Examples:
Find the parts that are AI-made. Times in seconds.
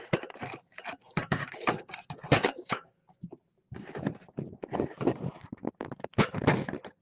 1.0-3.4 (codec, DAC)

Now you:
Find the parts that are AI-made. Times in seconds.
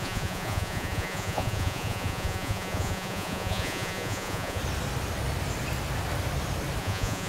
0.0-4.6 (vocoder, Vocos); 6.8-7.3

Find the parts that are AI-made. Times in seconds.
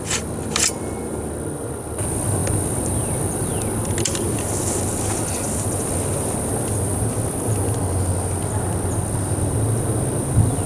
none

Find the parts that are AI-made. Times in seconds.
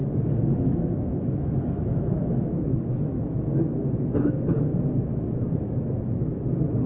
0.0-3.5 (autoencoder, DAC-VAE); 4.1-6.3